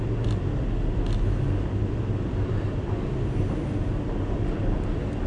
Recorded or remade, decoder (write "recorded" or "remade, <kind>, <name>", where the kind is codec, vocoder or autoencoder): recorded